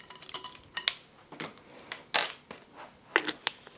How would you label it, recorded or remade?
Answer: recorded